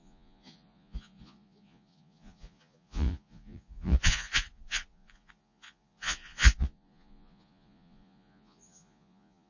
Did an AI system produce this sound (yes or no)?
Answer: yes